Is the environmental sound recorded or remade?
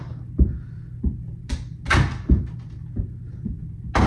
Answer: recorded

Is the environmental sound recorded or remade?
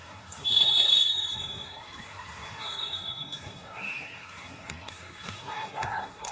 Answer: remade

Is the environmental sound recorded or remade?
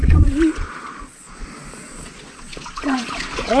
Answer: remade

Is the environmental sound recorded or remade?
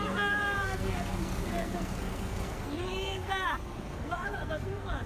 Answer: remade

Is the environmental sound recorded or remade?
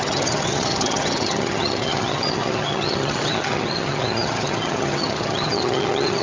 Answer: remade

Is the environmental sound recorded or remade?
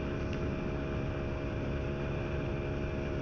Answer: recorded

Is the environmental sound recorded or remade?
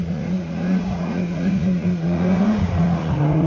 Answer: remade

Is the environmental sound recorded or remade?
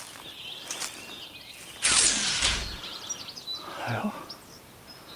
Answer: recorded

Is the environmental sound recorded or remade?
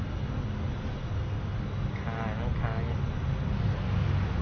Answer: recorded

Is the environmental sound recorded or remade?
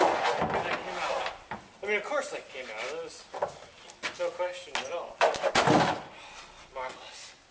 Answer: recorded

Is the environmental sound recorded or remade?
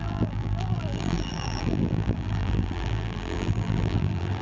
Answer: remade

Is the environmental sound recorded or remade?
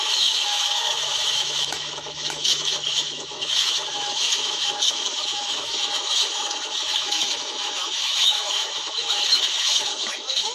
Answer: remade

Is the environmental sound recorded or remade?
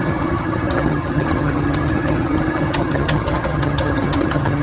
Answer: remade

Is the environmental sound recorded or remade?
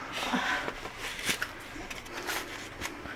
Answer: recorded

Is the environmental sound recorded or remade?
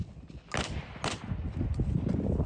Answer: recorded